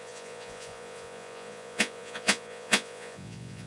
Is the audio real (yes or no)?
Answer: no